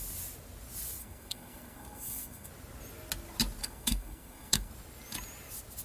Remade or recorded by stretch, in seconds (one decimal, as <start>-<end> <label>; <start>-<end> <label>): 0.0-1.0 recorded; 1.0-2.5 remade; 2.5-3.6 recorded; 3.6-4.7 remade; 4.7-5.8 recorded